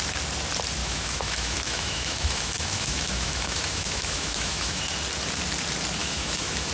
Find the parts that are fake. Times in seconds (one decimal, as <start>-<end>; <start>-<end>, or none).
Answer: 0.8-4.8; 6.0-6.7